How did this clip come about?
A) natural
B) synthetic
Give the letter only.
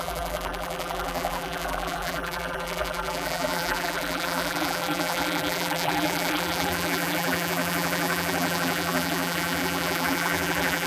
B